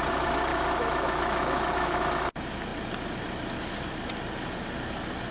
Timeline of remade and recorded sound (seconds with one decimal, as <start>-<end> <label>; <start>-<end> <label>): 0.0-0.5 recorded; 0.5-2.0 remade; 2.0-5.3 recorded